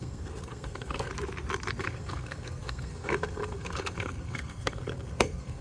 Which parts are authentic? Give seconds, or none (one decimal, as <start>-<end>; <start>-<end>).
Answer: 1.1-1.8